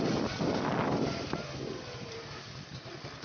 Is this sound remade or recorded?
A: recorded